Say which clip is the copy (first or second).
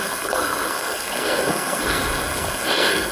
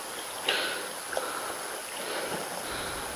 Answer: first